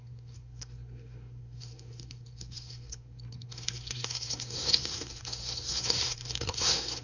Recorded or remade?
remade